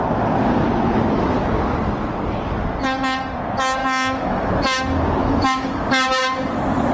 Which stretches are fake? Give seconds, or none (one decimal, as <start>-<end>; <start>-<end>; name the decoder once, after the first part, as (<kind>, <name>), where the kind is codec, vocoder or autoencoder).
3.8-4.5 (autoencoder, DAC-VAE); 5.2-5.8